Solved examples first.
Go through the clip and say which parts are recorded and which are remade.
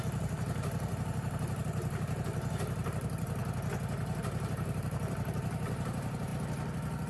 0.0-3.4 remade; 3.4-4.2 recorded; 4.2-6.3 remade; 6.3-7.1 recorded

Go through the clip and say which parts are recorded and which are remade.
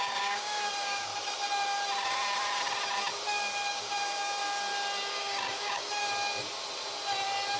0.0-1.1 remade; 1.1-3.7 recorded; 3.7-4.4 remade; 4.4-5.1 recorded; 5.1-6.0 remade; 6.0-7.6 recorded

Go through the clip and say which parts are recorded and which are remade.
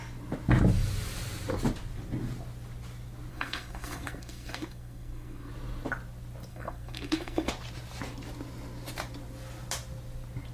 0.0-3.3 recorded; 3.3-5.5 remade; 5.5-6.5 recorded; 6.5-7.5 remade; 7.5-10.5 recorded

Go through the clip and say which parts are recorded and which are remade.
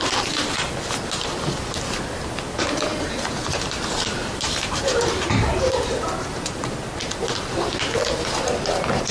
0.0-2.9 recorded; 2.9-6.6 remade; 6.6-9.1 recorded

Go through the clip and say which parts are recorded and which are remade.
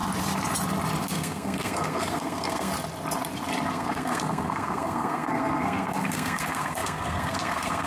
0.0-1.0 recorded; 1.0-2.7 remade; 2.7-3.7 recorded; 3.7-7.9 remade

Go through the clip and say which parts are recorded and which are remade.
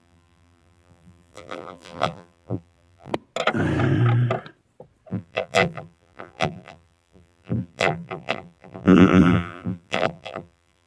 0.0-3.1 remade; 3.1-5.1 recorded; 5.1-10.9 remade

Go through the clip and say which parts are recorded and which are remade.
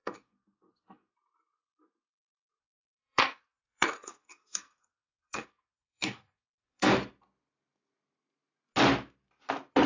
0.0-1.1 remade; 1.1-2.6 recorded; 2.6-6.9 remade; 6.9-9.9 recorded